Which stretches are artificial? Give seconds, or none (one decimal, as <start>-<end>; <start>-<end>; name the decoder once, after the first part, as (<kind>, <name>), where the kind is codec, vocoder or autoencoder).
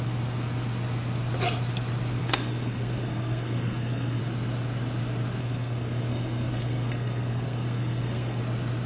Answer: 2.2-4.2 (codec, SNAC); 5.4-8.4